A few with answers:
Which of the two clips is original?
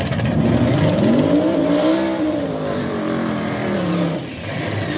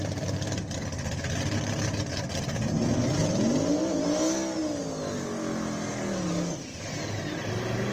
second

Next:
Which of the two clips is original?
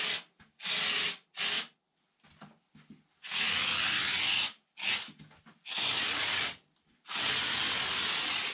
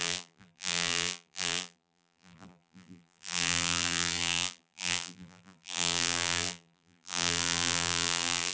first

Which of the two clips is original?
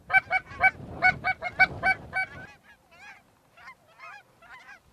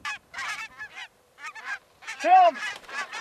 first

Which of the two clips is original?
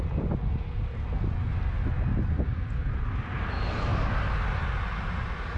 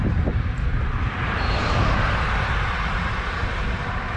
first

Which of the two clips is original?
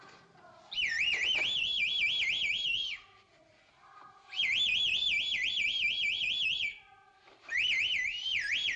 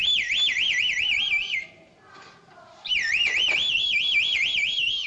first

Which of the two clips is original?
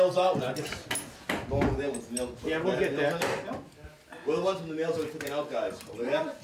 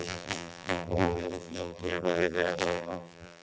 first